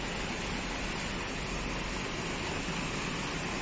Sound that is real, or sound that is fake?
real